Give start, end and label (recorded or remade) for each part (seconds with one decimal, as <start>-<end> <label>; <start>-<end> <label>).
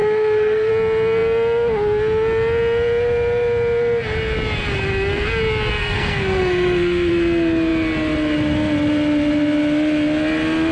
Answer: 0.0-0.7 remade; 0.7-5.8 recorded; 5.8-7.1 remade; 7.1-10.7 recorded